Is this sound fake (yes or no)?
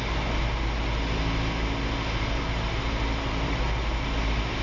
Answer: no